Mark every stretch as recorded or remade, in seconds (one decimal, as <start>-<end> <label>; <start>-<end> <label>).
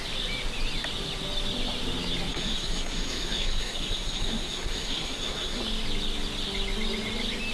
0.0-2.3 recorded; 2.3-5.6 remade; 5.6-7.5 recorded